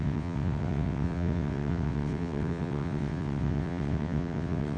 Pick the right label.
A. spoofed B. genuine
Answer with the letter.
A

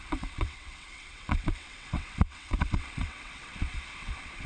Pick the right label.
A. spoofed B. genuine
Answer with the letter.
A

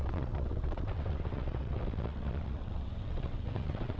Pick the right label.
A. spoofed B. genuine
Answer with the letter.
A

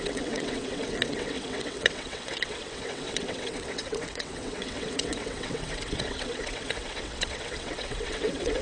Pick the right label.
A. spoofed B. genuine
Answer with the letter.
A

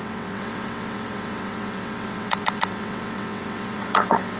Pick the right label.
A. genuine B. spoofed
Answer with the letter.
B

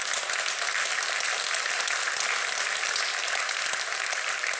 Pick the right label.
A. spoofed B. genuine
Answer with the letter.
B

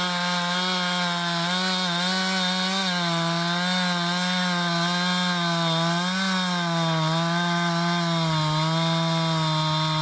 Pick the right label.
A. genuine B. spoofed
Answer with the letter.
A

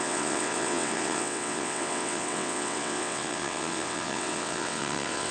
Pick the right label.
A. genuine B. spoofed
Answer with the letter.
B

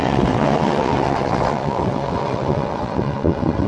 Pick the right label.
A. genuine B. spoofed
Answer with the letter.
B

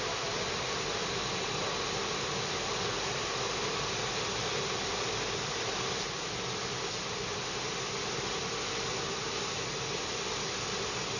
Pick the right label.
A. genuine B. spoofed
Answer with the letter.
A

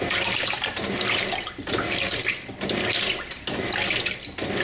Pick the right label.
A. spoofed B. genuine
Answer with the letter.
B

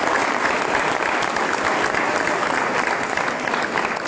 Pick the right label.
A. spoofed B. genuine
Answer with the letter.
B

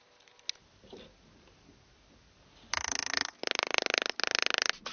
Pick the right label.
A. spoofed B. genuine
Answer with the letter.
B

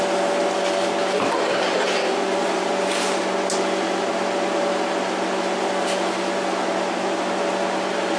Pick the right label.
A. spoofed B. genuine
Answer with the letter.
B